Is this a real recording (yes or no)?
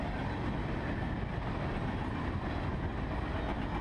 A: yes